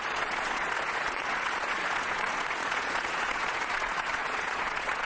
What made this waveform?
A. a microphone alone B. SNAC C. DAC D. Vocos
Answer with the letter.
D